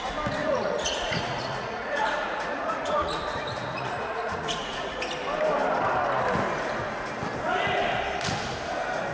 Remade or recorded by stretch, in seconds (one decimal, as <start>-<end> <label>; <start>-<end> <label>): 0.0-0.4 recorded; 0.4-5.0 remade; 5.0-9.1 recorded